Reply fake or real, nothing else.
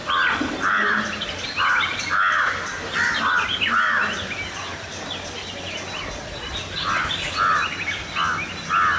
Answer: real